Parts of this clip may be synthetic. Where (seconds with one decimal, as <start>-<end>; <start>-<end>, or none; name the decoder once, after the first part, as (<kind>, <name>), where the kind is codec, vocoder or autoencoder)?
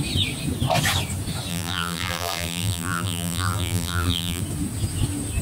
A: 1.5-4.4 (vocoder, BigVGAN v2)